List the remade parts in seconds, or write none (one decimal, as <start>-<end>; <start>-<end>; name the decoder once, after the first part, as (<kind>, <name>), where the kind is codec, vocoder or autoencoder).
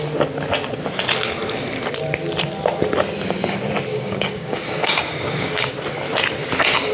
3.9-5.7 (codec, DAC)